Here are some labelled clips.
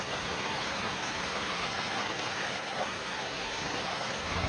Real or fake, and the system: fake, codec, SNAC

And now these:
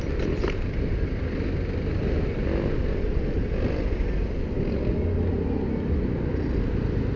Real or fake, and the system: real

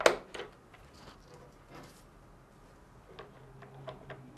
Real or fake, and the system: real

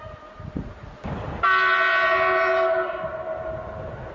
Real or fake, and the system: real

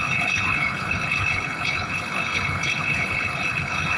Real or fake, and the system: fake, codec, HILCodec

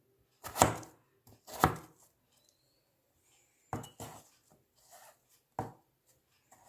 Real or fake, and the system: real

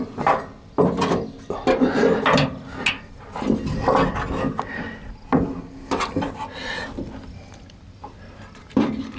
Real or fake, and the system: real